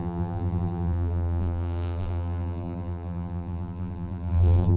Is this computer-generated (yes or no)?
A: yes